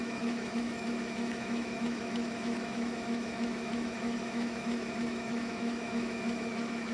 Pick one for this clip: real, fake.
fake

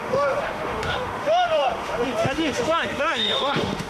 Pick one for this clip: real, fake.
fake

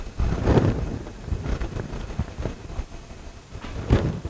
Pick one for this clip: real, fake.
real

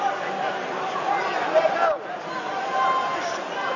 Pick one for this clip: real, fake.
real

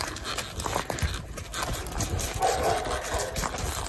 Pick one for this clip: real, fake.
real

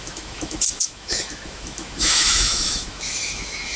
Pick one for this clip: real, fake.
fake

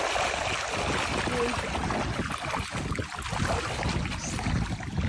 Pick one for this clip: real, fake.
real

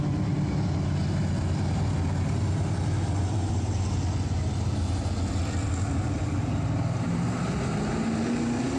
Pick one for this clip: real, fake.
real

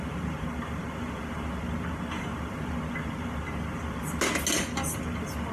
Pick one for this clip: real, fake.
real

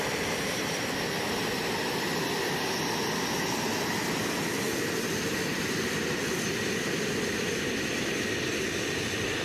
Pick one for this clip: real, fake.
real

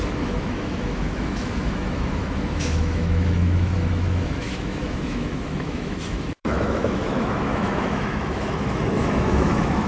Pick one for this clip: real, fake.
fake